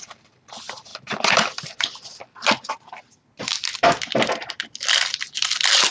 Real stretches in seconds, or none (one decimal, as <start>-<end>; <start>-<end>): 0.0-5.9